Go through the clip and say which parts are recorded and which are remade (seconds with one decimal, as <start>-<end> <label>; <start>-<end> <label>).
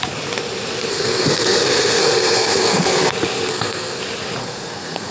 0.0-0.9 recorded; 0.9-3.1 remade; 3.1-3.5 recorded; 3.5-4.0 remade; 4.0-4.4 recorded; 4.4-5.1 remade